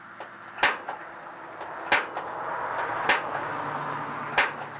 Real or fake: real